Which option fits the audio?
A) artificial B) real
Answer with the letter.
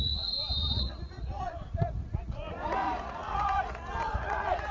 A